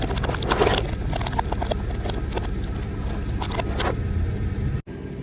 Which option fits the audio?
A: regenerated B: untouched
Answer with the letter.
B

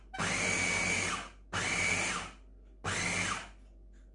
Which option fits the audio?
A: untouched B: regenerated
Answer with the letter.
A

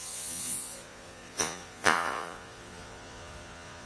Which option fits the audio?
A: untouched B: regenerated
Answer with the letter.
B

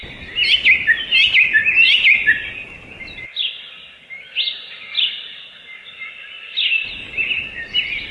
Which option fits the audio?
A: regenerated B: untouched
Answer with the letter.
B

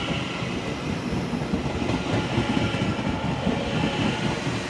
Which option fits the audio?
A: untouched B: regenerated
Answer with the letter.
A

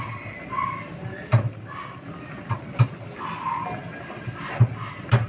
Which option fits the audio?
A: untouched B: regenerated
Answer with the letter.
A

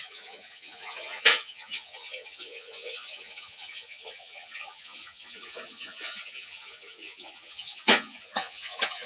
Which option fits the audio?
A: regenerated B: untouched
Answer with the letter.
A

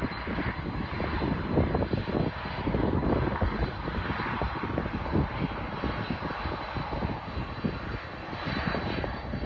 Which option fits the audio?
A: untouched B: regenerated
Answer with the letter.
A